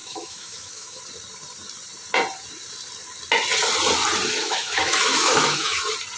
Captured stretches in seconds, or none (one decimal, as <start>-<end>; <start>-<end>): 1.0-4.4; 5.8-6.2